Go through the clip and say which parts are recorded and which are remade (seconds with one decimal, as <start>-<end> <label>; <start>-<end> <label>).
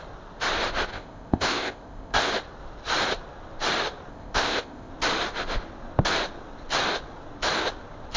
0.0-0.9 recorded; 0.9-2.3 remade; 2.3-4.1 recorded; 4.1-4.9 remade; 4.9-8.2 recorded